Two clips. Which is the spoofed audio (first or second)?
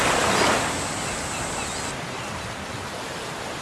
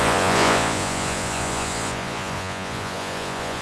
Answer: second